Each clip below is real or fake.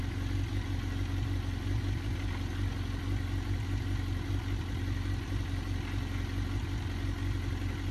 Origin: real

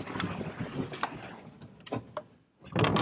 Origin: real